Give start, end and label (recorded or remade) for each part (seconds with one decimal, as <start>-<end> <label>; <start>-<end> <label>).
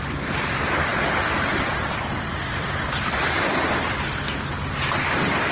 0.0-5.5 recorded